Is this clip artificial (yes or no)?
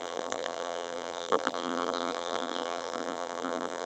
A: yes